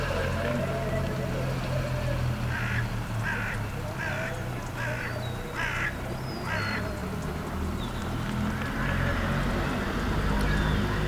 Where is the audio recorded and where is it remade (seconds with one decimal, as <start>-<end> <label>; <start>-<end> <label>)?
0.0-11.1 recorded